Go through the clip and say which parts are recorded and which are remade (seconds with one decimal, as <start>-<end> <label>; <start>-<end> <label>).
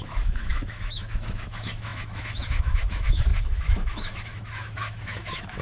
0.0-5.6 remade